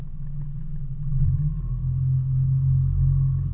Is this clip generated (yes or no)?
no